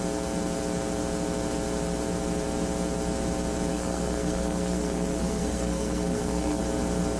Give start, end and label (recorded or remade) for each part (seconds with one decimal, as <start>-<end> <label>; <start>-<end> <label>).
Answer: 0.0-3.7 recorded; 3.7-6.6 remade; 6.6-7.2 recorded